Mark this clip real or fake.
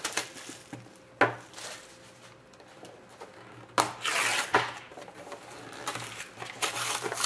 real